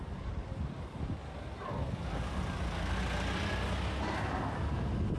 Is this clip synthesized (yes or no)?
no